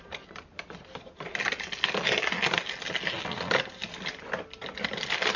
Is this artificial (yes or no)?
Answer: no